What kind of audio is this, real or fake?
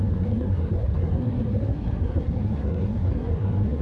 fake